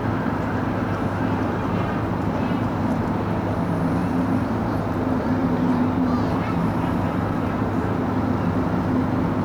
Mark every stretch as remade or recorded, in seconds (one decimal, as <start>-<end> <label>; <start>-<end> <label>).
0.0-2.8 remade; 2.8-4.0 recorded; 4.0-4.7 remade; 4.7-5.4 recorded; 5.4-7.7 remade; 7.7-9.4 recorded